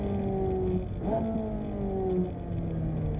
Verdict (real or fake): real